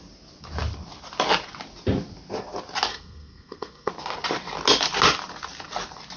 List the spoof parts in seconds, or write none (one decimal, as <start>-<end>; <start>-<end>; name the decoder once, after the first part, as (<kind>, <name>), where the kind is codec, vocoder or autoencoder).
2.9-3.9 (codec, SNAC)